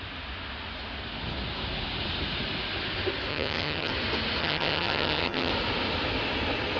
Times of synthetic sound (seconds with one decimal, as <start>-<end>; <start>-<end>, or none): 3.3-3.9; 4.4-5.5